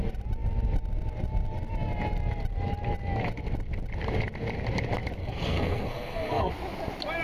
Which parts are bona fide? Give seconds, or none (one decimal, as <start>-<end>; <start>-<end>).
0.0-5.2; 6.5-7.2